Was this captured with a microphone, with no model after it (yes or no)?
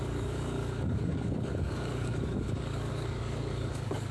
no